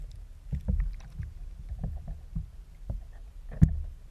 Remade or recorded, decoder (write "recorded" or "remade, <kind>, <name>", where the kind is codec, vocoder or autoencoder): recorded